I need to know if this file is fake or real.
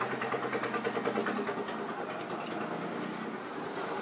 real